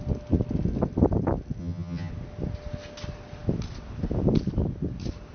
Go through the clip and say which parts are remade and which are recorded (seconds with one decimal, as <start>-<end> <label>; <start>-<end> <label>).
0.0-1.6 recorded; 1.6-2.1 remade; 2.1-5.3 recorded